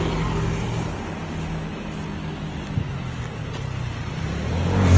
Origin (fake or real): real